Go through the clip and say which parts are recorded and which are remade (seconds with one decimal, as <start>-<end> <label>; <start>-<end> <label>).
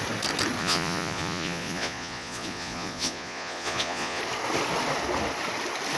0.0-0.6 recorded; 0.6-4.2 remade; 4.2-6.0 recorded